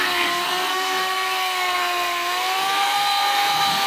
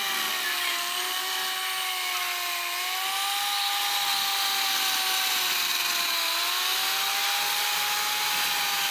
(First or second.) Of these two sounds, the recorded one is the second